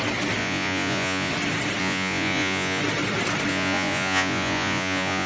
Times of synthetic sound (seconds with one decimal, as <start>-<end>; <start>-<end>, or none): 0.4-1.3; 1.8-2.8; 3.5-5.3